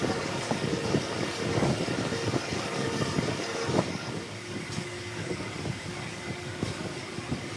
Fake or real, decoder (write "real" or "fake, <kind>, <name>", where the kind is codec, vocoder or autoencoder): fake, codec, DAC